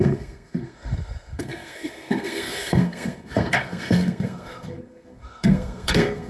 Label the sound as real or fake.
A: fake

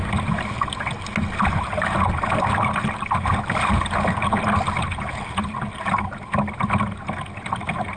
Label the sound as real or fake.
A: real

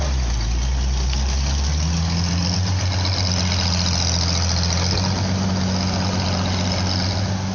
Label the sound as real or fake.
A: real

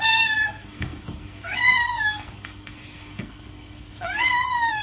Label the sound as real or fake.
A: fake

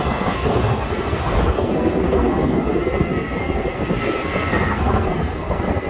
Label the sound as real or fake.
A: fake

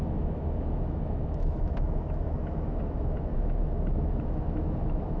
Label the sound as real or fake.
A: fake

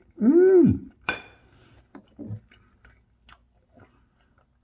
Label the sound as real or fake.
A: real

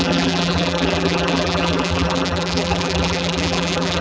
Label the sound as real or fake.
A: fake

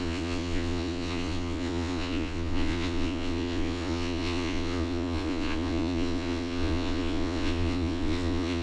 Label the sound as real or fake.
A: fake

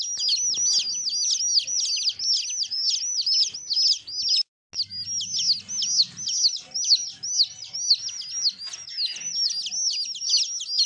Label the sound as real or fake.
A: real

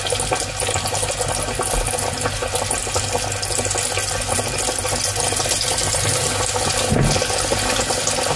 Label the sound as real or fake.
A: real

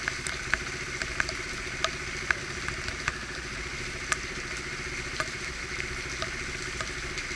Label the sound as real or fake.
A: real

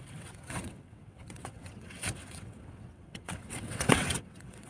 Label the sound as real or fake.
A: fake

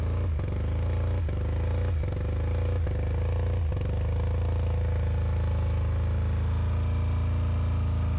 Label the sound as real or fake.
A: real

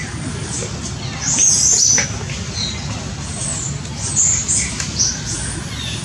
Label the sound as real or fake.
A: real